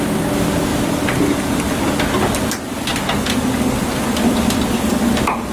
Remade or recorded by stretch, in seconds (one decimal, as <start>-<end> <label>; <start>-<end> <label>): 0.0-5.5 recorded